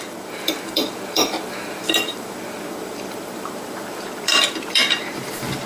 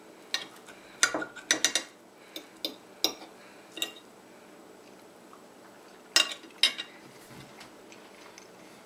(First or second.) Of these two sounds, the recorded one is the second